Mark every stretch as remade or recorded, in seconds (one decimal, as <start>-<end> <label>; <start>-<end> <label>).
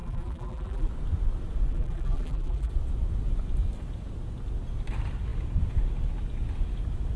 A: 0.0-0.9 remade; 0.9-1.7 recorded; 1.7-2.7 remade; 2.7-7.2 recorded